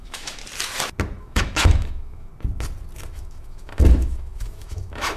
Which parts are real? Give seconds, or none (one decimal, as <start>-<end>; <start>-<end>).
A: 0.4-1.2; 2.3-3.1